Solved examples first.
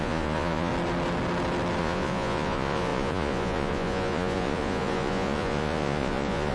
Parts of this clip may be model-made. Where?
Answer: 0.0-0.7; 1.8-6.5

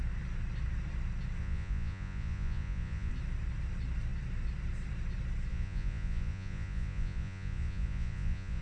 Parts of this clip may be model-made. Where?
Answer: 1.4-3.1; 5.5-8.6

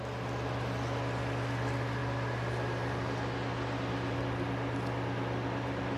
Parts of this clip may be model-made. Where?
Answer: none

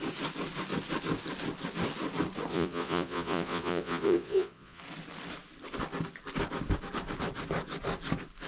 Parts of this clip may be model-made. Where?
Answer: 2.5-4.8

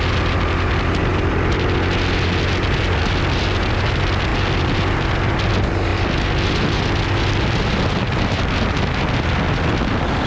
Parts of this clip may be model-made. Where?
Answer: none